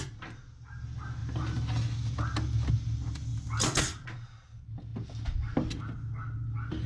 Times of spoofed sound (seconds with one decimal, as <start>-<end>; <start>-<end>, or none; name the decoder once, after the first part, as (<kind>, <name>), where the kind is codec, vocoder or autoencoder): none